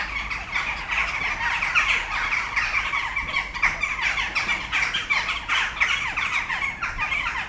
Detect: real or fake real